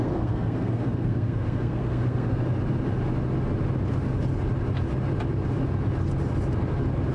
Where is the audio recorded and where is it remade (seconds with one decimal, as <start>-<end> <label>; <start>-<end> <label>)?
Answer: 0.0-2.4 remade; 2.4-7.1 recorded

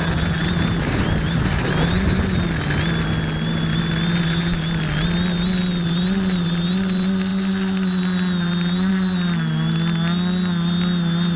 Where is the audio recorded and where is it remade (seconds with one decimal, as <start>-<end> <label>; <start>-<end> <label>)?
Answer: 0.0-0.4 recorded; 0.4-1.7 remade; 1.7-11.4 recorded

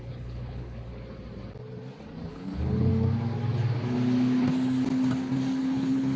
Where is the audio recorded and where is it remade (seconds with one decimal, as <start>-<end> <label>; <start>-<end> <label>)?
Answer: 0.0-0.9 remade; 0.9-2.3 recorded; 2.3-2.9 remade; 2.9-5.6 recorded; 5.6-6.2 remade